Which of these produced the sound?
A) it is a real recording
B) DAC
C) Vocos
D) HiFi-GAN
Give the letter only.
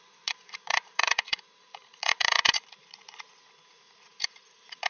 C